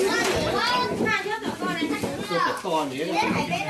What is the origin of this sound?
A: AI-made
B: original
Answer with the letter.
B